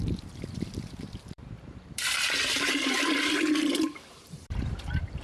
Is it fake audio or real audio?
fake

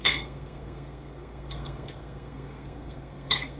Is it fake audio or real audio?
fake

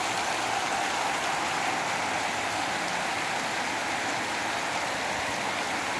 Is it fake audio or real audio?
real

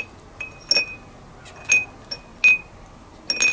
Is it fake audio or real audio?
real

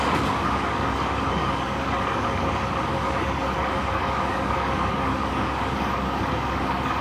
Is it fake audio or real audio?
fake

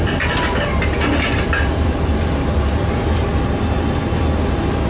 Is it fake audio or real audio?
real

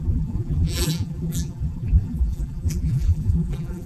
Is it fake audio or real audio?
fake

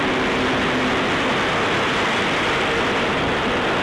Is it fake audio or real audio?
real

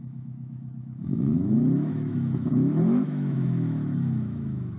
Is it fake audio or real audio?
fake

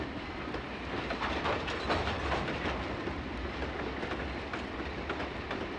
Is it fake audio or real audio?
real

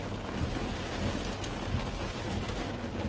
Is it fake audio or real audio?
real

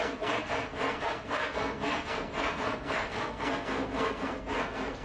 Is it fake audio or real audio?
fake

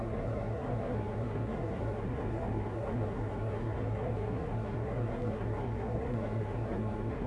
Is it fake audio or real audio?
fake